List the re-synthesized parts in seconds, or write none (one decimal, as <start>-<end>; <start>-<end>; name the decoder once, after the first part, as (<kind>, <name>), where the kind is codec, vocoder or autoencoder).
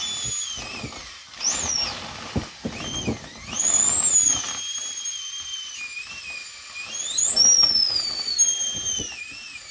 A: none